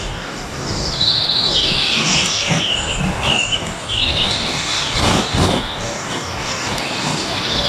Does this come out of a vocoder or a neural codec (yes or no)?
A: yes